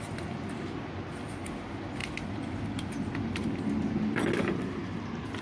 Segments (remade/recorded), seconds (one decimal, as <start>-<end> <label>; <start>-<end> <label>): 0.0-5.4 recorded